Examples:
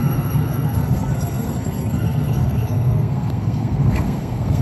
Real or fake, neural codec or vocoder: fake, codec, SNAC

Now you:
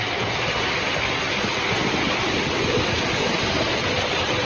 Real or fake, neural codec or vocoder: real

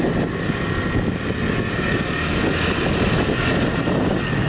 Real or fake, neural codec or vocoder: real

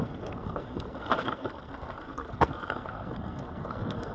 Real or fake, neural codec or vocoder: fake, codec, SNAC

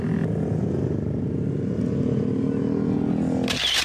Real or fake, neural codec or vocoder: real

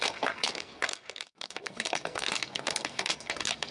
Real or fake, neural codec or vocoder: fake, codec, SNAC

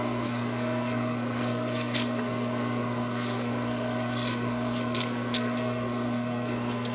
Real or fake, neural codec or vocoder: fake, codec, SNAC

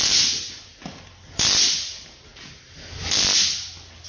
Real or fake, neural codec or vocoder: real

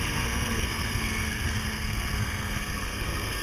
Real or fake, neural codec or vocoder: fake, codec, SNAC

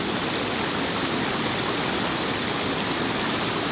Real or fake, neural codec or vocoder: real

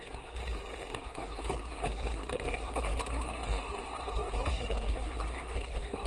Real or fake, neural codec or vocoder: fake, codec, SNAC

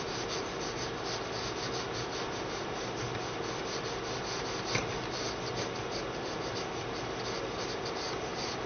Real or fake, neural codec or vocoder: real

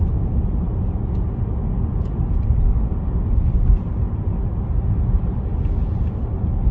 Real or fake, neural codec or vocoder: real